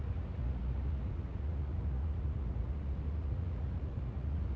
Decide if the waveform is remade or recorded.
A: remade